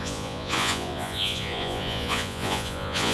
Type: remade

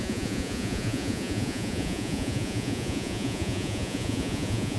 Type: remade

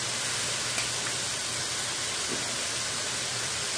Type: recorded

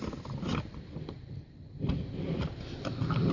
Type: recorded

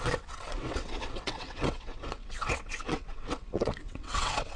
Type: remade